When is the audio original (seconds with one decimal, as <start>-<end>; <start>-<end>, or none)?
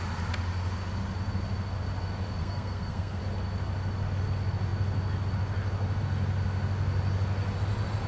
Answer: 0.0-2.4; 3.2-8.1